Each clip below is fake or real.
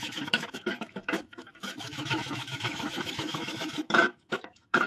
fake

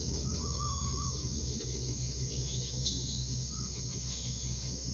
fake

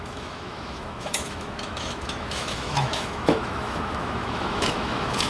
fake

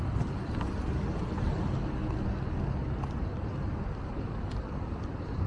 real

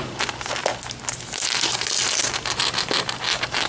real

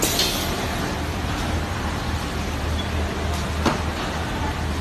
real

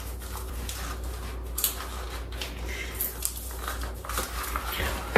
real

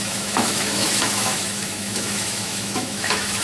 fake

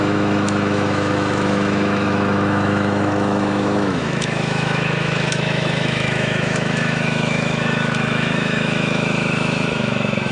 fake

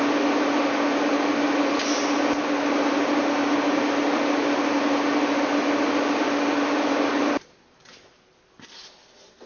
real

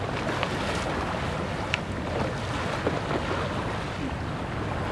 real